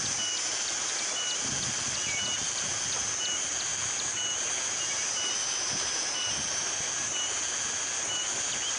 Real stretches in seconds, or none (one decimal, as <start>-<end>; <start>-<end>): 0.0-8.8